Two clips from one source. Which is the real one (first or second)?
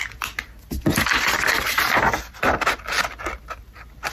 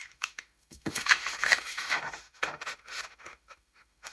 first